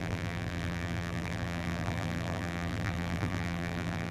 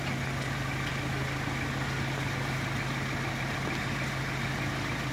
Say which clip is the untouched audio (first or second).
second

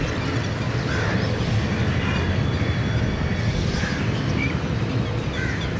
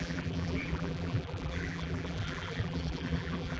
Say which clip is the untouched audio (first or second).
first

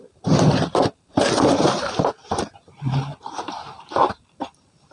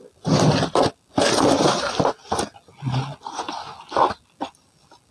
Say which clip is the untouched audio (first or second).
second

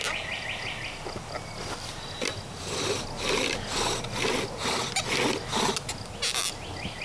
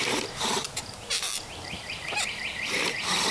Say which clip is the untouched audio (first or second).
first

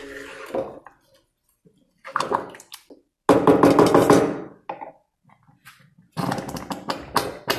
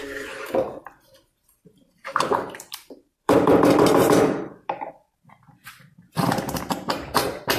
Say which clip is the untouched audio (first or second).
first